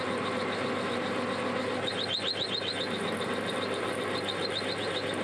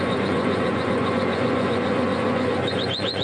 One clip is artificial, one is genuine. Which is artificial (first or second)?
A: second